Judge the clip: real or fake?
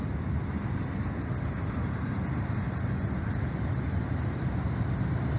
real